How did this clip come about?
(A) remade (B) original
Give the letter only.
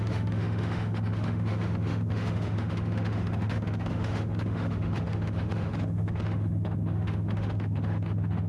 A